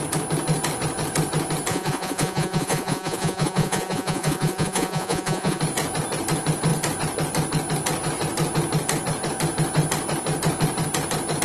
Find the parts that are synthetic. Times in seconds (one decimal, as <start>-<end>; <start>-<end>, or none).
1.7-5.6